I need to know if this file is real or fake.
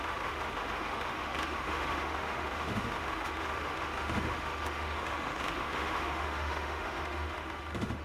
fake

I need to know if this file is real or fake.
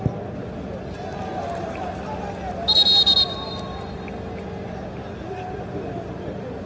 real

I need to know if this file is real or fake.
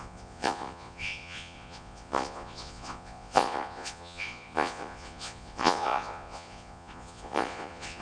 fake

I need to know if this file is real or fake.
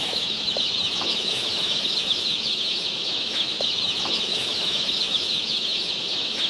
fake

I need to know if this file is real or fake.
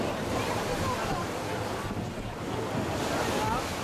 real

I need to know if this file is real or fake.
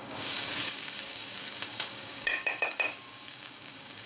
fake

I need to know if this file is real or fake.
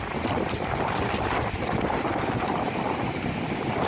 real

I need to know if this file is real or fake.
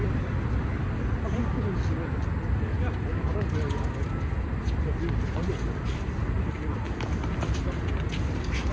real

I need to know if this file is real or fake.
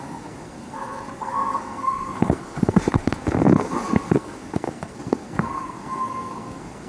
fake